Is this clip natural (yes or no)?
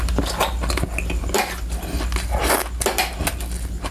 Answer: yes